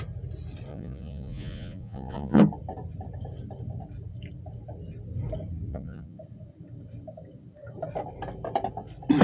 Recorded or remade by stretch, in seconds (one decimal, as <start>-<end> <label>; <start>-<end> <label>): 0.0-0.7 recorded; 0.7-2.4 remade; 2.4-5.7 recorded; 5.7-6.2 remade; 6.2-9.2 recorded